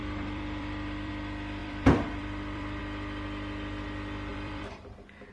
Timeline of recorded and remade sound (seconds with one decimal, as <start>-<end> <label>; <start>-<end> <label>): 0.0-1.1 remade; 1.1-1.6 recorded; 1.6-2.8 remade; 2.8-4.3 recorded; 4.3-5.3 remade